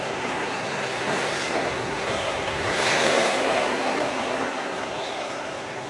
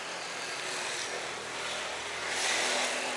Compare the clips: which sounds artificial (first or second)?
first